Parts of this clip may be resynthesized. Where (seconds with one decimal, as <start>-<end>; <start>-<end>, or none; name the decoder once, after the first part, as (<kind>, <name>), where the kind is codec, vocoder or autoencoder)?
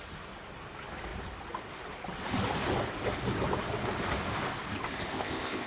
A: 5.1-5.7 (codec, ZipCodec)